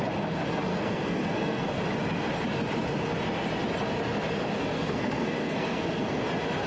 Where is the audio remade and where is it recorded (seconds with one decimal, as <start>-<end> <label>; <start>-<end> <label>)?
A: 0.0-0.7 recorded; 0.7-1.8 remade; 1.8-4.7 recorded; 4.7-6.2 remade; 6.2-6.7 recorded